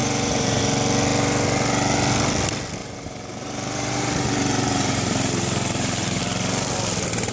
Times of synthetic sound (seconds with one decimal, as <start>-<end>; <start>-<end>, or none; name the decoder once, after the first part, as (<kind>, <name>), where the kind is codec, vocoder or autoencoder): 0.0-0.6 (vocoder, BigVGAN v2); 2.8-6.2